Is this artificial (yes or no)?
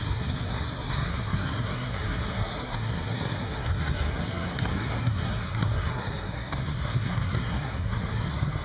yes